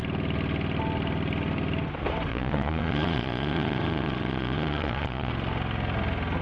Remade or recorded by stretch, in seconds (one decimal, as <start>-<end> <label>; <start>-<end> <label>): 0.0-2.3 recorded; 2.3-5.3 remade; 5.3-6.4 recorded